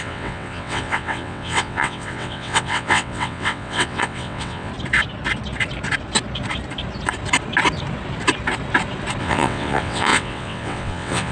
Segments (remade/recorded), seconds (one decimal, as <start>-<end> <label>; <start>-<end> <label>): 0.0-4.7 remade; 4.7-9.2 recorded; 9.2-11.3 remade